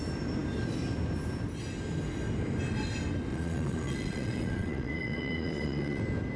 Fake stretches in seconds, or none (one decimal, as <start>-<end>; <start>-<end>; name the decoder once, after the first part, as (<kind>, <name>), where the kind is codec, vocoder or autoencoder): 3.3-6.0 (vocoder, Vocos)